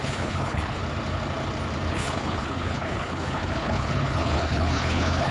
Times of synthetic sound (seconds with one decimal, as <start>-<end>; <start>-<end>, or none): 0.0-0.8; 1.9-5.3